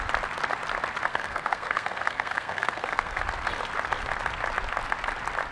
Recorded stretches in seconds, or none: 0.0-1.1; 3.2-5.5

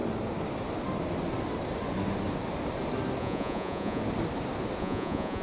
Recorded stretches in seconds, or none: 0.0-3.2; 4.0-4.8

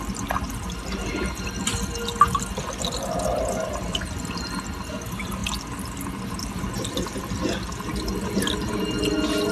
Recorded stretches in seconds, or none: 0.0-9.5

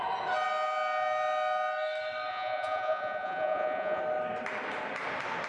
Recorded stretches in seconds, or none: 0.0-2.3; 4.0-5.5

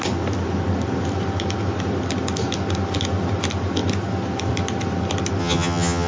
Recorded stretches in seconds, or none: 0.0-5.4

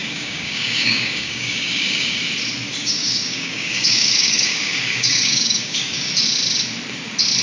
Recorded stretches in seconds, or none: 2.2-2.8; 6.1-7.4